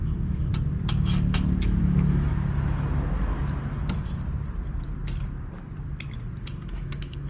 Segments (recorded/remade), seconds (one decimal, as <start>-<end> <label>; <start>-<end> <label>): 0.0-0.5 remade; 0.5-1.8 recorded; 1.8-2.3 remade; 2.3-6.7 recorded; 6.7-7.3 remade